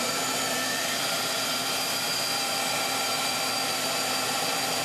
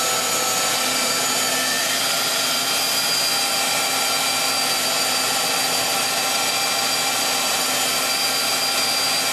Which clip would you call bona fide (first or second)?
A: second